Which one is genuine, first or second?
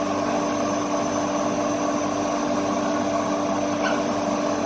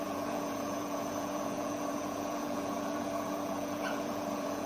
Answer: first